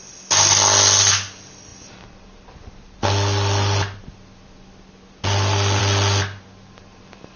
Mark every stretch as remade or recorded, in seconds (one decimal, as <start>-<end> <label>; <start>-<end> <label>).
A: 0.0-7.4 recorded

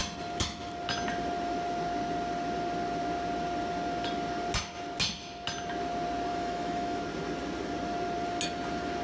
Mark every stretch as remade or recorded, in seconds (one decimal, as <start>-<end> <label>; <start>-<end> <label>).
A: 0.0-6.3 recorded; 6.3-7.0 remade; 7.0-9.0 recorded

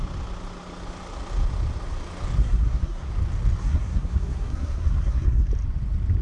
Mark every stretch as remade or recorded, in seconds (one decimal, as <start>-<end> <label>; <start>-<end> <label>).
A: 0.0-2.4 recorded; 2.4-3.1 remade; 3.1-3.6 recorded; 3.6-5.5 remade; 5.5-6.2 recorded

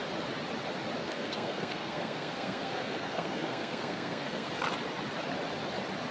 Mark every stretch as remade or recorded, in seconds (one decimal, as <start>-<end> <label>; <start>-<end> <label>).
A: 0.0-1.0 recorded; 1.0-4.5 remade; 4.5-6.1 recorded

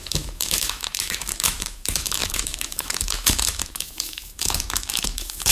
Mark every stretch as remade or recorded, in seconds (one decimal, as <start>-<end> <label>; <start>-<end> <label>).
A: 0.0-5.5 remade